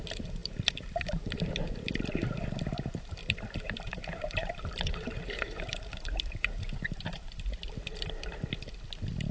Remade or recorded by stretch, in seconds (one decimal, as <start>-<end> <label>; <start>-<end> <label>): 0.0-0.4 recorded; 0.4-1.4 remade; 1.4-3.2 recorded; 3.2-7.4 remade; 7.4-9.3 recorded